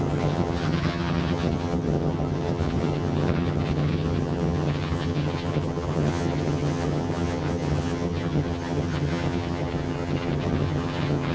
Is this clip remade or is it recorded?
remade